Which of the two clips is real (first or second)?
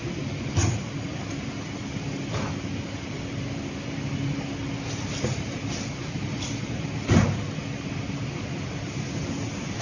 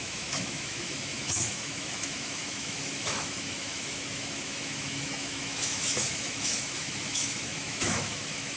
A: first